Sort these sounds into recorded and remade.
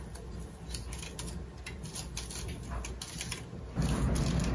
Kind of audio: recorded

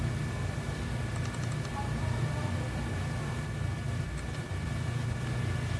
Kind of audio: recorded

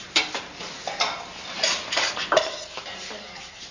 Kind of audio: remade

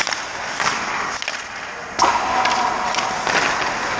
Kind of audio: recorded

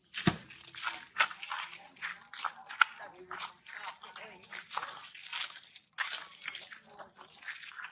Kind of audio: recorded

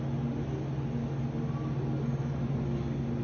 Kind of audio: recorded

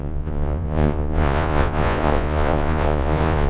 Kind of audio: remade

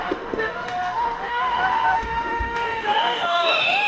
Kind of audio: remade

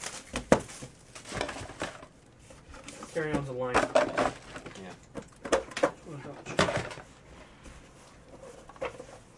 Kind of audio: recorded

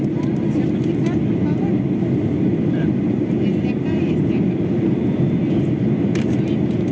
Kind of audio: recorded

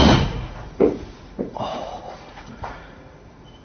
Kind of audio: remade